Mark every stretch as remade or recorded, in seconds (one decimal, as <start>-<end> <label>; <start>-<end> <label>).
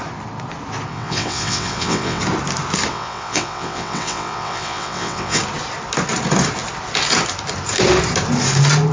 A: 0.0-0.9 recorded; 0.9-2.2 remade; 2.2-2.9 recorded; 2.9-5.4 remade; 5.4-8.9 recorded